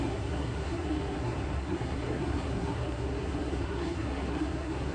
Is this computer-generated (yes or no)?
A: yes